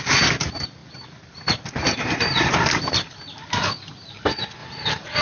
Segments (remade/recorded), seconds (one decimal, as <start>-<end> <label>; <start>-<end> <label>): 0.0-5.2 recorded